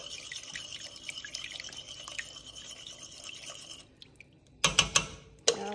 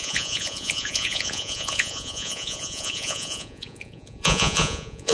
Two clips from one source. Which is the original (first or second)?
first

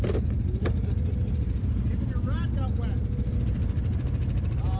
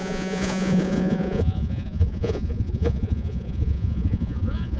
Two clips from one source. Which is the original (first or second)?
first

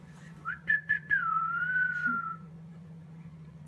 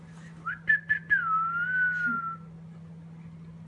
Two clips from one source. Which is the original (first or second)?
second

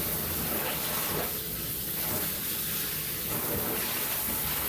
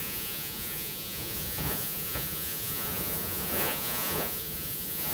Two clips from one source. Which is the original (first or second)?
first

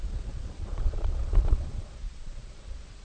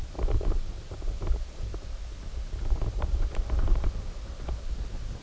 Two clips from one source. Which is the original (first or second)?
second